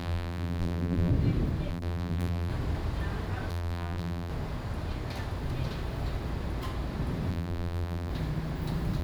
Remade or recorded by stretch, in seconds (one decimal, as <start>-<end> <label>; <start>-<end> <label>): 0.0-1.1 remade; 1.1-1.7 recorded; 1.7-2.5 remade; 2.5-3.5 recorded; 3.5-4.3 remade; 4.3-7.3 recorded; 7.3-8.1 remade; 8.1-9.0 recorded